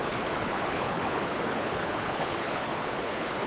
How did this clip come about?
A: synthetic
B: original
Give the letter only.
A